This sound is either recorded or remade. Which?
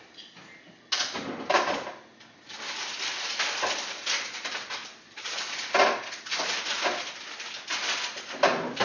recorded